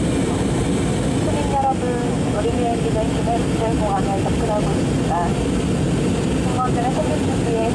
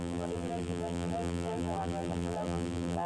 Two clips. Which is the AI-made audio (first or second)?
second